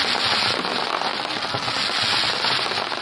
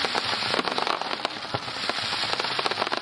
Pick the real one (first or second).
first